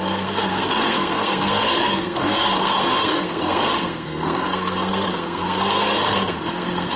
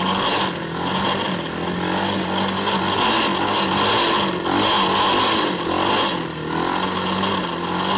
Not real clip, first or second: first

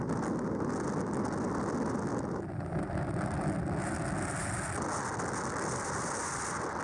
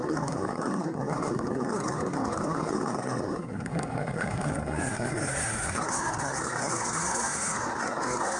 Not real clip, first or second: second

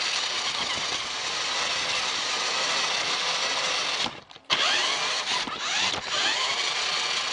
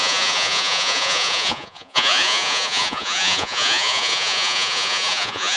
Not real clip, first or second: second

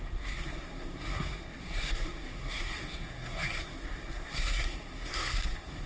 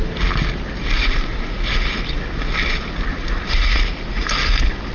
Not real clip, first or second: first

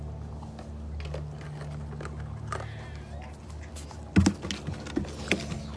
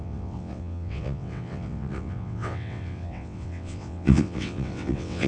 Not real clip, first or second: second